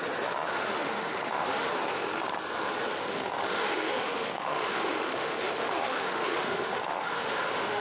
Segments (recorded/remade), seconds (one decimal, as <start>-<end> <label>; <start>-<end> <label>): 0.0-0.5 recorded; 0.5-1.7 remade; 1.7-3.0 recorded; 3.0-7.8 remade